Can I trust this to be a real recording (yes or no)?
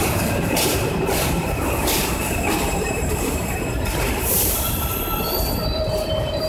no